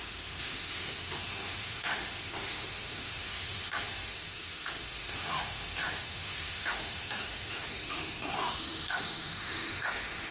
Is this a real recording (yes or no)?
no